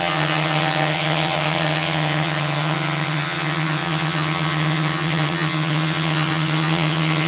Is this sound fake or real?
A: fake